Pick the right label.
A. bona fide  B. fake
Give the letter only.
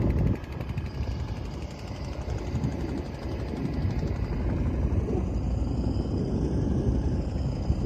A